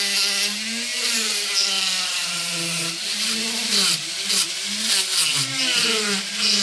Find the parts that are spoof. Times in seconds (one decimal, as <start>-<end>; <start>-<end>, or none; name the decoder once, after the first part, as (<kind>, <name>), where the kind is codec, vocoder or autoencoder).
0.9-4.9 (vocoder, BigVGAN v2)